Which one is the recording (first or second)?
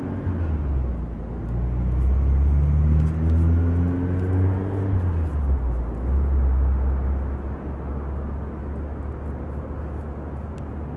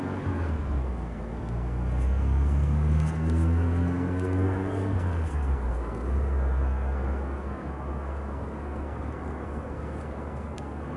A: first